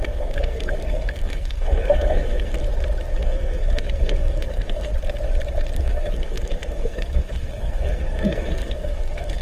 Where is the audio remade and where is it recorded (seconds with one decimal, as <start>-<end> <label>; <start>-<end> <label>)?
0.0-2.6 remade; 2.6-3.2 recorded; 3.2-4.9 remade; 4.9-5.8 recorded; 5.8-9.4 remade